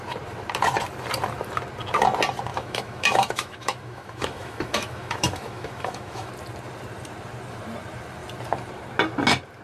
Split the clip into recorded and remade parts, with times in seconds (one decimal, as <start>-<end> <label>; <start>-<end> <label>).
0.0-2.5 recorded; 2.5-6.3 remade; 6.3-9.6 recorded